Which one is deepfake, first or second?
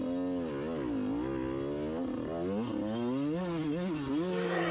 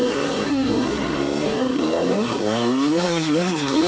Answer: second